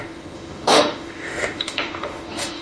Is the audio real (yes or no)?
no